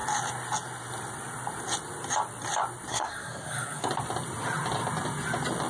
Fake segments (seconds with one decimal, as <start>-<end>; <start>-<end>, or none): 2.9-3.9